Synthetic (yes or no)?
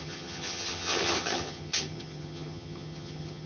yes